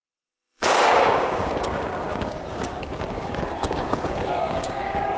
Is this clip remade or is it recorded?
remade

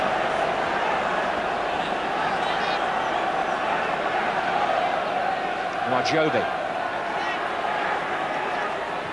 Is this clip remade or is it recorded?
recorded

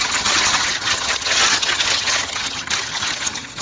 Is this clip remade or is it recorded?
remade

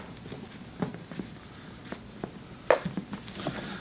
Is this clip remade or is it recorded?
recorded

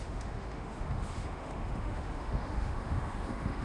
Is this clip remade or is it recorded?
remade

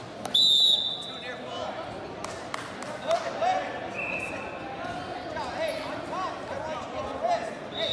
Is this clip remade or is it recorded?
recorded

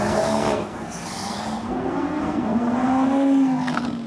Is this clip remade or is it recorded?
remade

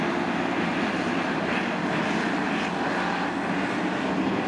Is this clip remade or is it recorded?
recorded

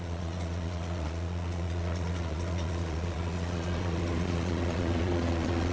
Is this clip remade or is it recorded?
remade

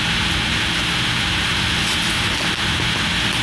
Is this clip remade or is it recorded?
recorded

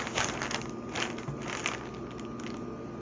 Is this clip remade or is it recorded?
recorded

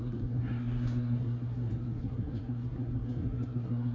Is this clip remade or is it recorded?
remade